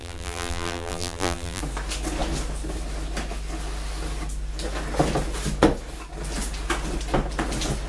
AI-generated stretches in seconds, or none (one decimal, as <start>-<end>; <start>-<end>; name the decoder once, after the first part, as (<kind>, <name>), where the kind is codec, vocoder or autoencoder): 0.0-1.6 (vocoder, BigVGAN v2)